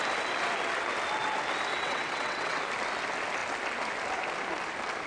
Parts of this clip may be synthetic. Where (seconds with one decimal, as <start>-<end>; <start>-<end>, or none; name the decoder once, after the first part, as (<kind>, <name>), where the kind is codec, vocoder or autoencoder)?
1.7-2.6 (vocoder, WaveNeXt)